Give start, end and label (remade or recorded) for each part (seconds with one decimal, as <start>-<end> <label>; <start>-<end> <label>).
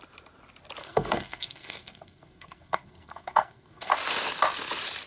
0.0-0.8 recorded; 0.8-3.9 remade; 3.9-5.1 recorded